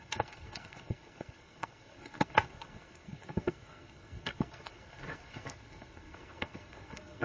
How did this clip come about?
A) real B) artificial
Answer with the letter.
B